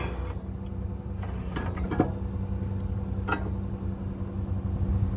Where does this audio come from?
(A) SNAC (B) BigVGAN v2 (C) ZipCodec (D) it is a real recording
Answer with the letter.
D